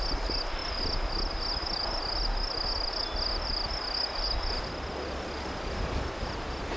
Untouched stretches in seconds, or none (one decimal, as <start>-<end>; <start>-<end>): 0.0-6.8